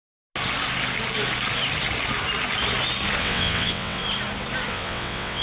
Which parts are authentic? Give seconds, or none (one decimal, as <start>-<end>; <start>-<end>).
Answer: 0.0-3.2; 4.0-4.7